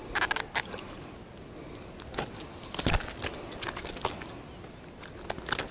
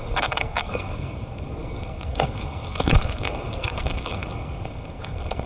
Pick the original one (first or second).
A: first